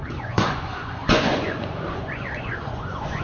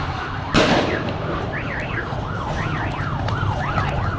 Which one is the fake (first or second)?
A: first